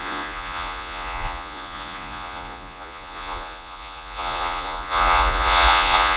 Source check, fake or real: fake